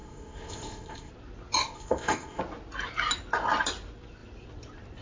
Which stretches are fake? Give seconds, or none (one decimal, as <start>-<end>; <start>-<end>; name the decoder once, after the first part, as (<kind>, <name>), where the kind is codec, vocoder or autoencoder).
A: 0.0-1.1 (codec, ZipCodec); 1.6-2.4